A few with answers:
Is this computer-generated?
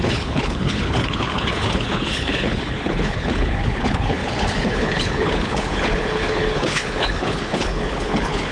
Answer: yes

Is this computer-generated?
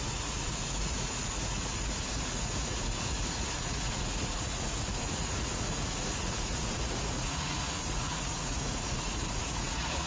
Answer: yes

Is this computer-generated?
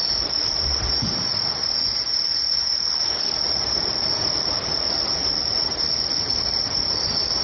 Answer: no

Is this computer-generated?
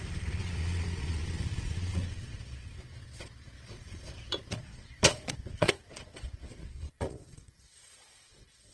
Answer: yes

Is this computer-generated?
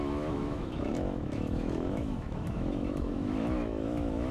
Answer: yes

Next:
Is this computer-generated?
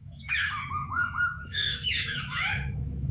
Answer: yes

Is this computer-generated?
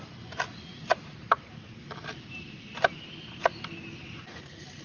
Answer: no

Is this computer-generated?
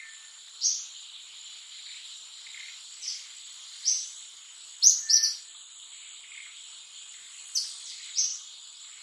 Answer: no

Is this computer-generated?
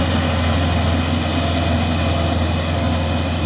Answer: no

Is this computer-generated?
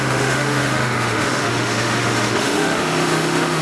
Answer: yes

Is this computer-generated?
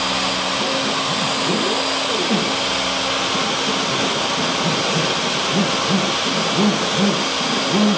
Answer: no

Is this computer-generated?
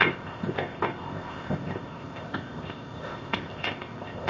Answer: yes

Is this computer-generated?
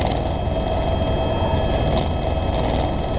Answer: no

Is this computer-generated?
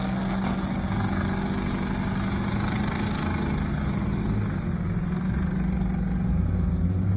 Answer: no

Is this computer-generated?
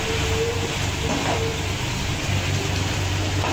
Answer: no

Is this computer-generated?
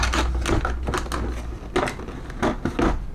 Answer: no